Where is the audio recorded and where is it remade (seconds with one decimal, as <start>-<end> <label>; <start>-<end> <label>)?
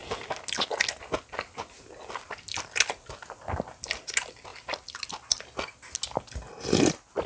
0.0-7.3 recorded